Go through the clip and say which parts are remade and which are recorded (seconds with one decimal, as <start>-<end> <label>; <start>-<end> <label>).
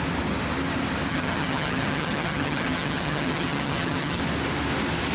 0.0-1.1 recorded; 1.1-4.2 remade; 4.2-5.1 recorded